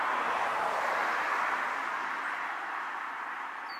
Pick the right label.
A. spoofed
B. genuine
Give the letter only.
B